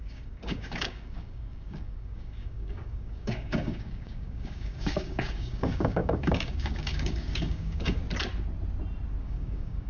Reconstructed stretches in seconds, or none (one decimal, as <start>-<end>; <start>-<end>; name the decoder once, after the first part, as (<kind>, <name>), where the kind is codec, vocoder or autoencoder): 0.0-8.0 (codec, DAC); 9.2-9.9